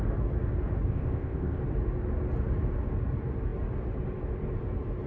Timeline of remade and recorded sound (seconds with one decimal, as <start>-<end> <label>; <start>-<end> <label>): 0.0-0.9 recorded; 0.9-1.6 remade; 1.6-5.1 recorded